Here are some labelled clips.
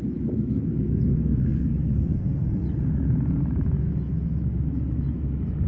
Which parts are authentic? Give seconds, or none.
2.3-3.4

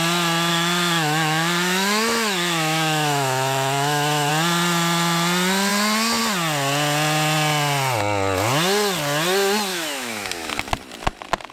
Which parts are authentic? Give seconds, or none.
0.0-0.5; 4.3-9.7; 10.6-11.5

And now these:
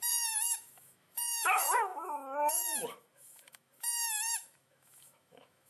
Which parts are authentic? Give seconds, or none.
none

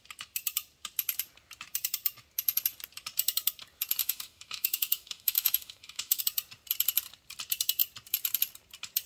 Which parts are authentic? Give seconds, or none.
0.0-4.0; 6.2-9.1